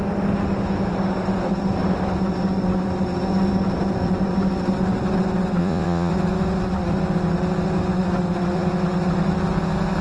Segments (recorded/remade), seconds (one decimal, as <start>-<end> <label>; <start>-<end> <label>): 0.0-5.6 recorded; 5.6-6.1 remade; 6.1-10.0 recorded